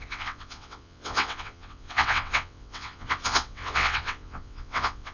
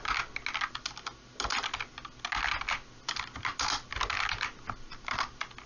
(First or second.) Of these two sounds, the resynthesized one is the first